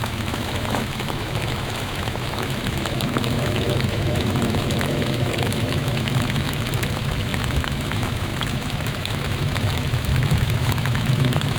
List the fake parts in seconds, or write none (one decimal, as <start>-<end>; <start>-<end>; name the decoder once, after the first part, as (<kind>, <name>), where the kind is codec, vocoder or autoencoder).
0.0-11.6 (autoencoder, DAC-VAE)